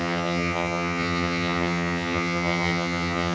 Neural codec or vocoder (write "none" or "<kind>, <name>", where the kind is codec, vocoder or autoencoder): vocoder, HiFi-GAN